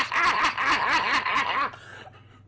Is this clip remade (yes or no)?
no